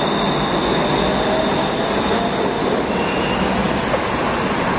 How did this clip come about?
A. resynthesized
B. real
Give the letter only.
B